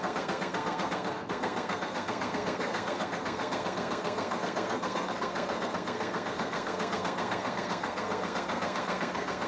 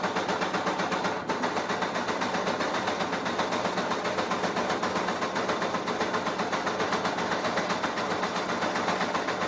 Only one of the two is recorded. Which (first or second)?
second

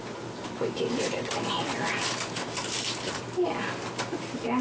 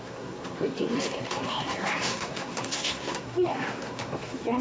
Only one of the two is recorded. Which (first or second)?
first